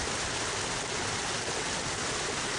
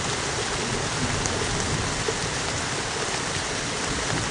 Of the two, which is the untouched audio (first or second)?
second